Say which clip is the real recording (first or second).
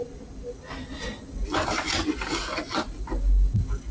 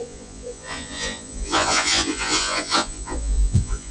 first